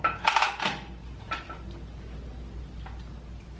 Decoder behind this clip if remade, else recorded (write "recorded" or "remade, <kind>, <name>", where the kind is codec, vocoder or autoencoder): recorded